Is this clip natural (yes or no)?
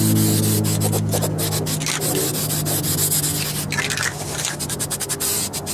yes